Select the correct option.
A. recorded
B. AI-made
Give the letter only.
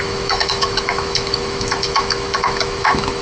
B